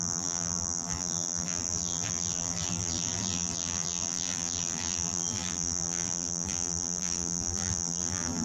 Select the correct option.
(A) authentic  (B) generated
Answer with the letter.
B